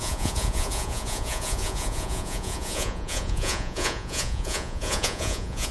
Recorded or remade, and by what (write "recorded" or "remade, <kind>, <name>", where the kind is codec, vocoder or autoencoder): remade, vocoder, Vocos